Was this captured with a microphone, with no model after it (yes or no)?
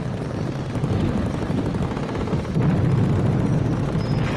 yes